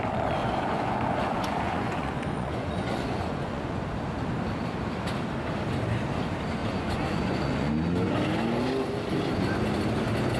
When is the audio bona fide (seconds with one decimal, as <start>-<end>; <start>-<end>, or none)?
0.0-0.4; 3.8-6.6; 7.7-10.4